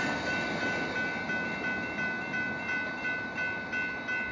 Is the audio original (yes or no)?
yes